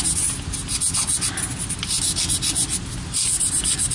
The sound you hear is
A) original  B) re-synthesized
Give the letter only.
A